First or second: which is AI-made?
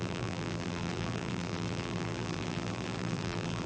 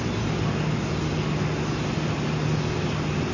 first